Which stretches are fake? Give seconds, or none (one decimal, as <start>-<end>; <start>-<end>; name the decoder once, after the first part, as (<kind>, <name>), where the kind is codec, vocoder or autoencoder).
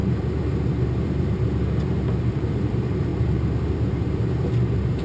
0.0-5.0 (vocoder, BigVGAN v2)